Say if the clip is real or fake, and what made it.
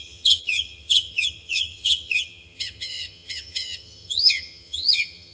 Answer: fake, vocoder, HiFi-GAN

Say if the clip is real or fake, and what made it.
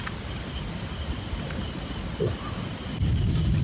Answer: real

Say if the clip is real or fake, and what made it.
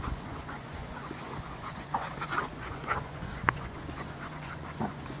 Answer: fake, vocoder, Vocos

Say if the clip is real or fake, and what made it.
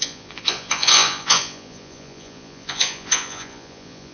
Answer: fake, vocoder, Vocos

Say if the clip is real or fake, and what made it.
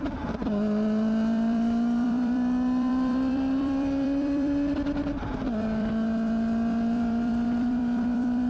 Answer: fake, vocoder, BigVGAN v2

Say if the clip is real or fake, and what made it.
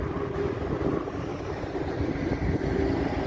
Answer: real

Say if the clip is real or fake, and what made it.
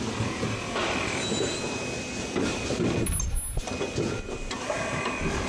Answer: real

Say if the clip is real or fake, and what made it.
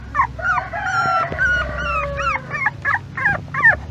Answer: real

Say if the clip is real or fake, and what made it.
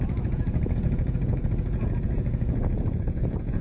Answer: fake, vocoder, Vocos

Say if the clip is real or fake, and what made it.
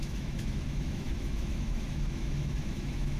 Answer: fake, autoencoder, DAC-VAE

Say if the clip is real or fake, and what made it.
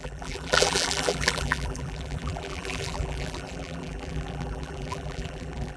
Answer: fake, vocoder, BigVGAN v2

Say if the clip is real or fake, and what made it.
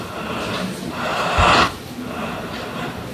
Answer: real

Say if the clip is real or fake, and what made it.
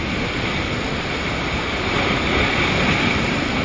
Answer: real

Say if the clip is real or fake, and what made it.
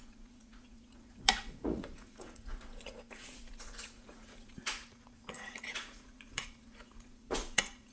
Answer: fake, vocoder, Vocos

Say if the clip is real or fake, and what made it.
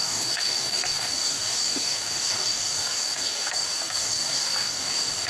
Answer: fake, codec, DAC